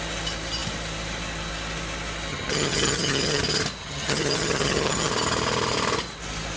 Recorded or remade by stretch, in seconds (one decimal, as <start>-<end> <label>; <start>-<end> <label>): 0.0-2.3 recorded; 2.3-3.4 remade; 3.4-3.8 recorded; 3.8-5.1 remade; 5.1-6.6 recorded